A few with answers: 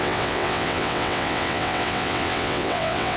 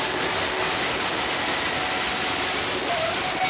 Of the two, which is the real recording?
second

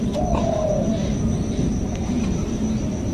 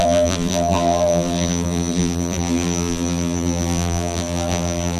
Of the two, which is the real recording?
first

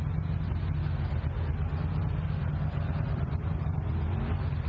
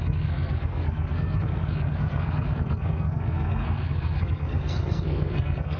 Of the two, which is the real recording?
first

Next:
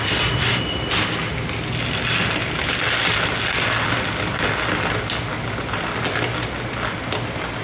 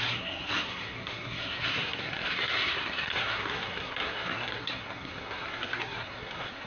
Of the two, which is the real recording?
first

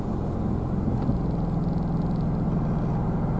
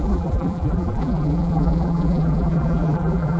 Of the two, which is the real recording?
first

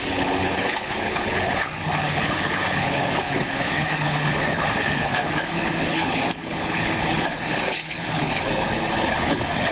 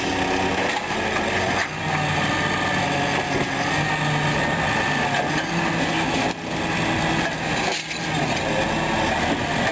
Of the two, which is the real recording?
second